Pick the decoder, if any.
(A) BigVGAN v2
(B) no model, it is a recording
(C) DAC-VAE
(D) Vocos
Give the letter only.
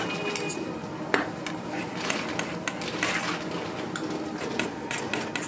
B